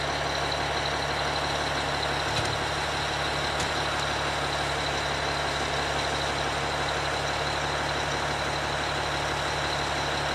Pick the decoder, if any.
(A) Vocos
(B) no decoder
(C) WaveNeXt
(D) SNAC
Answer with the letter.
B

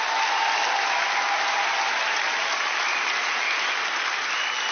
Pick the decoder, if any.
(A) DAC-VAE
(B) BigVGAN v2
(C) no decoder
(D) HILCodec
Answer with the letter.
C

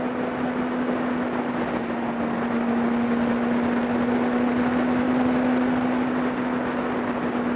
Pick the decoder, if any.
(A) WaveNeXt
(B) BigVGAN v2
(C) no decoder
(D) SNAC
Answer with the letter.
C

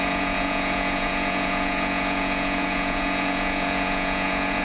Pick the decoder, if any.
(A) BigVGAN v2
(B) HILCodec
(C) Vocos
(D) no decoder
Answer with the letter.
C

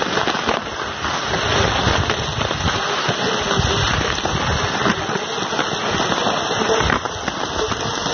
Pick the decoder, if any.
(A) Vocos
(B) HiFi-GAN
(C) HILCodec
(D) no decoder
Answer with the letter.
D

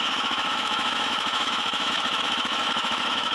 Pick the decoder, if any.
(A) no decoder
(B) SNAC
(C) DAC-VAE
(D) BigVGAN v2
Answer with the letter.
C